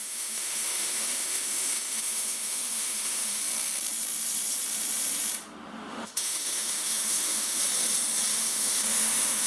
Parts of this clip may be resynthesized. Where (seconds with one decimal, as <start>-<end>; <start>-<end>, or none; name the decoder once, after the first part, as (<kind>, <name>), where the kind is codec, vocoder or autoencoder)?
0.0-3.4 (autoencoder, DAC-VAE); 5.9-7.6; 8.3-9.5